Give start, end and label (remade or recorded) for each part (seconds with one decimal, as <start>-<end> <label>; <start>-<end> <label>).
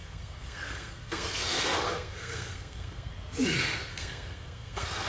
0.0-3.1 remade; 3.1-3.9 recorded; 3.9-5.1 remade